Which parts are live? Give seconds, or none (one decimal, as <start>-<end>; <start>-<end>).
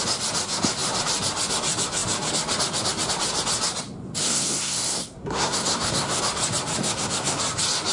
0.0-4.2; 6.2-6.8; 7.4-7.9